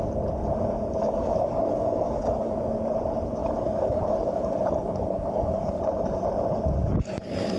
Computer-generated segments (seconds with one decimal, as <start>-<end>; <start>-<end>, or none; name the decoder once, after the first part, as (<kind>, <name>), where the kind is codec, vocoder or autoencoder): 1.0-2.8 (codec, DAC); 3.4-5.8; 6.8-7.6